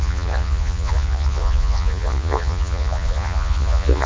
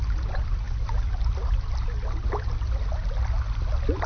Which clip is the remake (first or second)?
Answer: first